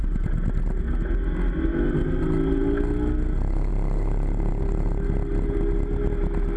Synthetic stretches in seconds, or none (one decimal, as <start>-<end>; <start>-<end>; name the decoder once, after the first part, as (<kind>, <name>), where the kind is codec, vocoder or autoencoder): none